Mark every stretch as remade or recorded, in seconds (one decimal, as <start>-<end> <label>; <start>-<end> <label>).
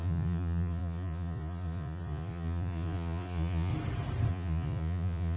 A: 0.0-3.7 remade; 3.7-4.3 recorded; 4.3-5.4 remade